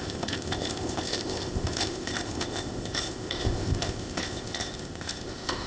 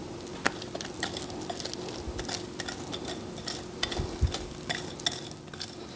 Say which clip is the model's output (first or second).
first